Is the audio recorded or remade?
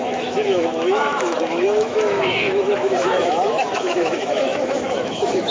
remade